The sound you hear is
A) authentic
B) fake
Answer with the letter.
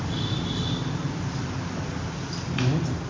A